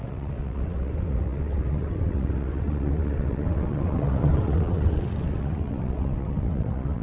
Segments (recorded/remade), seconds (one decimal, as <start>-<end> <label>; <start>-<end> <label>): 0.0-7.0 remade